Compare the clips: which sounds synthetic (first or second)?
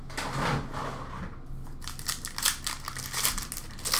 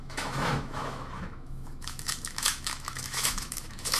second